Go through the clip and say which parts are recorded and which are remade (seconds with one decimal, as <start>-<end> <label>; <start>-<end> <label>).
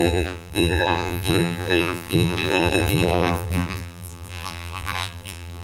0.0-5.6 remade